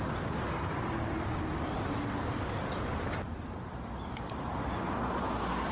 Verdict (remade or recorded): recorded